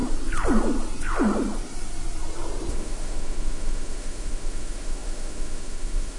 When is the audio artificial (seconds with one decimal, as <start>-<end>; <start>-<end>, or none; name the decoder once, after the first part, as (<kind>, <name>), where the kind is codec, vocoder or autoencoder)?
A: 2.7-6.2 (autoencoder, DAC-VAE)